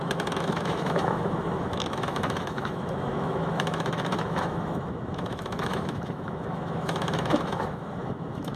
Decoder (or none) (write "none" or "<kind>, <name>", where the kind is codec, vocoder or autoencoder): autoencoder, DAC-VAE